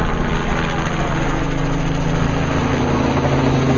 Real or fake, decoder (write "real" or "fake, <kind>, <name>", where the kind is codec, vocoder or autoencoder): real